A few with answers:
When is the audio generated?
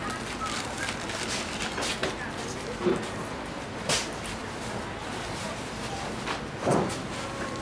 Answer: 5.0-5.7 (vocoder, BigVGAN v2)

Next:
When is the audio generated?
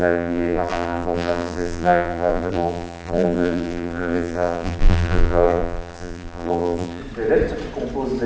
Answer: 0.0-7.0 (vocoder, BigVGAN v2)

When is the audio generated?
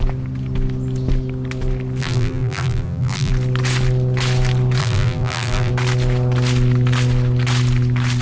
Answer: 2.0-3.3 (vocoder, BigVGAN v2); 4.8-5.7